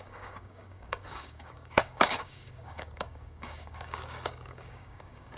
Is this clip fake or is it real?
fake